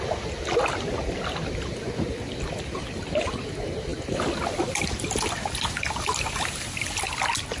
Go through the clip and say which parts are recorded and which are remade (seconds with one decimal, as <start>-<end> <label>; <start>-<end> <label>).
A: 0.0-7.6 recorded